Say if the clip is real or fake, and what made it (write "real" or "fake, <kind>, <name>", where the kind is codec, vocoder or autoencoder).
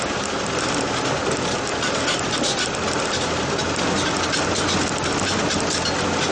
real